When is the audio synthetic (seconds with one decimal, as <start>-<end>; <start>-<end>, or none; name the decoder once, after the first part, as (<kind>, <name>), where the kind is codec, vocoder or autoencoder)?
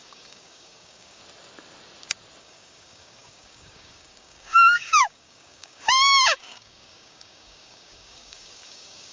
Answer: 0.0-1.2 (codec, DAC); 2.4-9.1